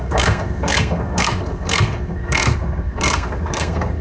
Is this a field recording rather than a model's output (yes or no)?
no